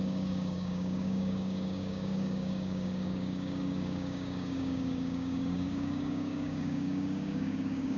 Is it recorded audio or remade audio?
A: remade